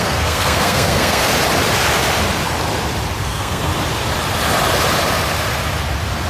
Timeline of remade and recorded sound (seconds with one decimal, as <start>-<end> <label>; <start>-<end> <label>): 0.0-1.3 remade; 1.3-3.2 recorded; 3.2-3.7 remade; 3.7-6.3 recorded

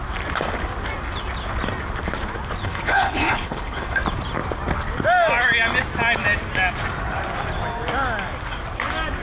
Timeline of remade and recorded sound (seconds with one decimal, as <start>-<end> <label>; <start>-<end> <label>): 0.0-2.6 recorded; 2.6-4.0 remade; 4.0-9.2 recorded

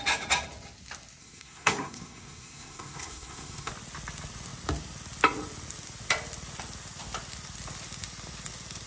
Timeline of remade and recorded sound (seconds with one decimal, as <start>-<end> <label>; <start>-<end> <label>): 0.0-1.2 recorded; 1.2-3.7 remade; 3.7-8.9 recorded

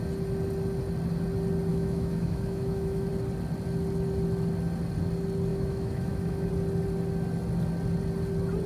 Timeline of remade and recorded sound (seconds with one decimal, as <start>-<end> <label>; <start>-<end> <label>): 0.0-1.7 recorded; 1.7-3.1 remade; 3.1-5.5 recorded; 5.5-6.5 remade; 6.5-8.7 recorded